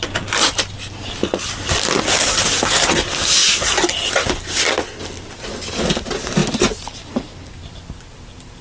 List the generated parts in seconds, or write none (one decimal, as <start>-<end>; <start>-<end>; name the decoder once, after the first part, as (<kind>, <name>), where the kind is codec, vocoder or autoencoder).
none